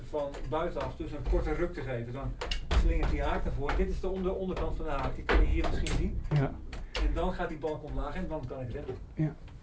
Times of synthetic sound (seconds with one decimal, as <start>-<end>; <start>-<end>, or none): none